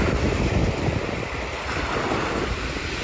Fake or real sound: real